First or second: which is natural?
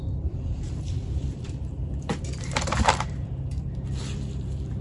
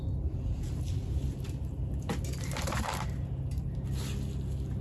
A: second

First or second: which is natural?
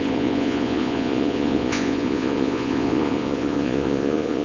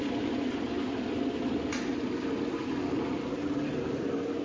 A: second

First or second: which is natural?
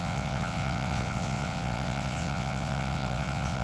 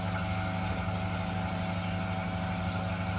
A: second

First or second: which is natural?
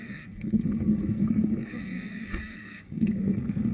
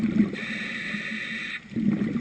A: second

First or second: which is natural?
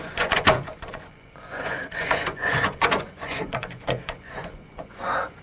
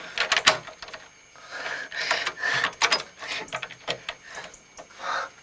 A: second